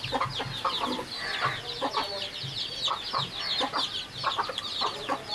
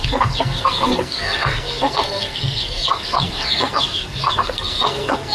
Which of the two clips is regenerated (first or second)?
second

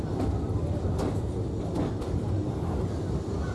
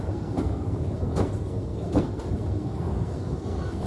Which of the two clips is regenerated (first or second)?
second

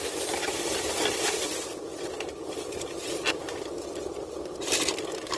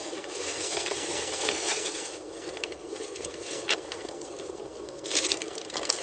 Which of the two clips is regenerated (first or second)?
second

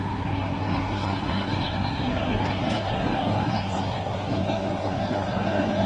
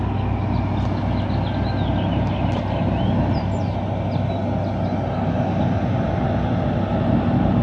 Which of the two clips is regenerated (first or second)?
first